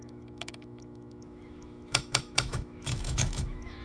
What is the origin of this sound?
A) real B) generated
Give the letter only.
B